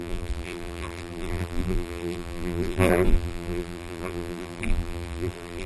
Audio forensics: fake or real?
fake